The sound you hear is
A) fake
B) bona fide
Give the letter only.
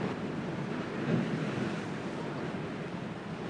B